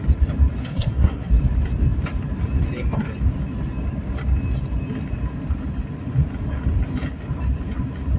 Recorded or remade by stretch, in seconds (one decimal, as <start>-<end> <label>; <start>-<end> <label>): 0.0-0.6 recorded; 0.6-1.3 remade; 1.3-8.2 recorded